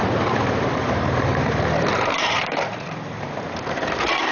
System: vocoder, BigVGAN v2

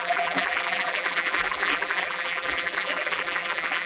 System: vocoder, BigVGAN v2